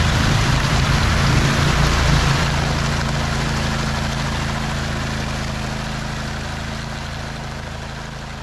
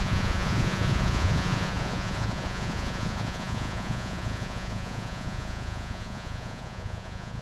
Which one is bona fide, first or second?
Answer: first